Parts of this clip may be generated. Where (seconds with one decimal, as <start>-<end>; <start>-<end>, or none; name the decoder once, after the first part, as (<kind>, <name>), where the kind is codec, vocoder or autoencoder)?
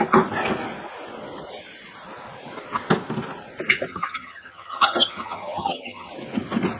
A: 3.9-6.1 (vocoder, HiFi-GAN)